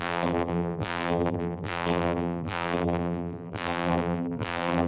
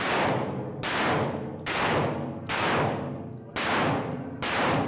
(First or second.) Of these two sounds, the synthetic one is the first